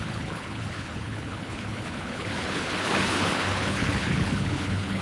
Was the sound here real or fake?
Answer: fake